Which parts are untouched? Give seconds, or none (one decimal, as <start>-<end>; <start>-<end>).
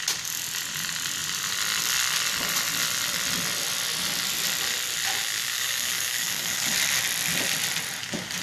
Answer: 0.0-5.2; 6.7-8.4